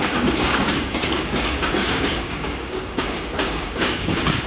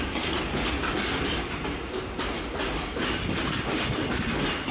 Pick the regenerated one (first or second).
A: first